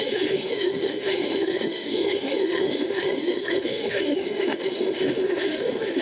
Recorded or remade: remade